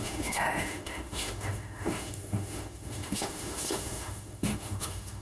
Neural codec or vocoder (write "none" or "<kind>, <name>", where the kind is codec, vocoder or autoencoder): autoencoder, DAC-VAE